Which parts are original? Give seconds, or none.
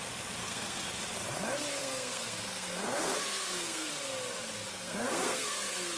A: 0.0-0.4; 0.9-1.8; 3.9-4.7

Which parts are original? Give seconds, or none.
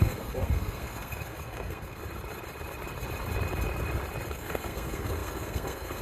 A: 2.0-4.3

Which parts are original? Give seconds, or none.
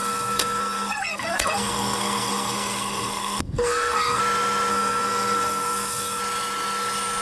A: 4.2-4.7; 6.2-7.2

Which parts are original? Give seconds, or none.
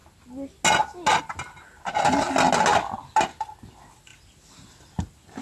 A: 0.0-5.4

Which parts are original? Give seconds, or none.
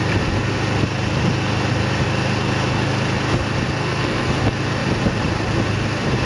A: 0.0-3.8; 4.3-6.3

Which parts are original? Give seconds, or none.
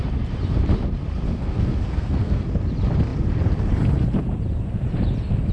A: 0.0-1.3; 2.4-5.5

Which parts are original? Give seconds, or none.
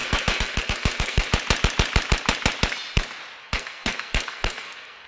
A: 1.3-3.4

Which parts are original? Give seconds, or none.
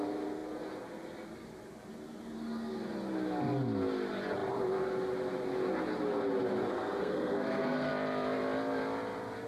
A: 0.0-6.7; 7.9-9.5